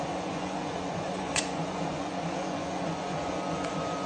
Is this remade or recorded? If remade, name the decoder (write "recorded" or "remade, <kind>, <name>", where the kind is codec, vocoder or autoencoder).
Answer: remade, vocoder, Vocos